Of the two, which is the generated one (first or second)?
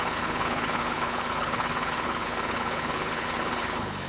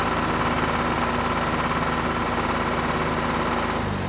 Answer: first